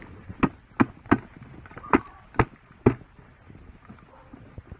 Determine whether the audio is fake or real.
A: real